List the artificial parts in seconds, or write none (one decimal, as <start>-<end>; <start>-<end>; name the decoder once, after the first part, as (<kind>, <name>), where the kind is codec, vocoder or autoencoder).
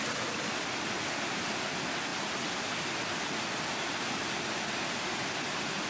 none